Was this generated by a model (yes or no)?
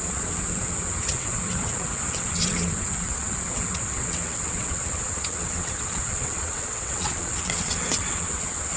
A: yes